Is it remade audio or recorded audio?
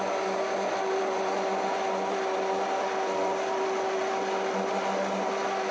recorded